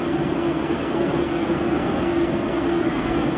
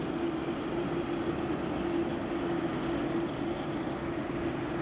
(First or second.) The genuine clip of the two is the second